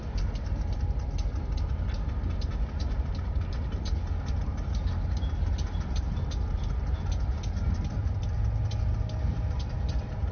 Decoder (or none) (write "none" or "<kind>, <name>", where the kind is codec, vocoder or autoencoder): none